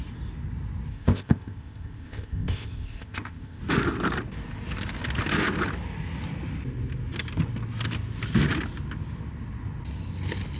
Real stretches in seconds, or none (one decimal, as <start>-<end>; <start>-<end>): 0.0-0.9; 3.6-10.6